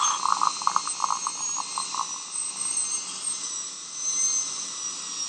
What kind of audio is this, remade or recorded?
recorded